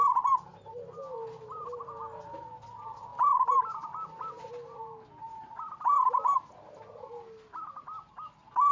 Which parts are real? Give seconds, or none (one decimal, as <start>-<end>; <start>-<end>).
0.0-8.7